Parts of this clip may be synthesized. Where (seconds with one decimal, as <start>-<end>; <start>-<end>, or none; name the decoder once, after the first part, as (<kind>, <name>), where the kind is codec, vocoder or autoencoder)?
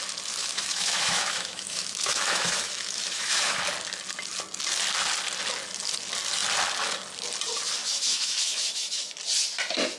0.4-3.6 (autoencoder, DAC-VAE); 7.8-9.1